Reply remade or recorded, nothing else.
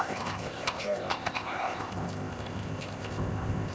remade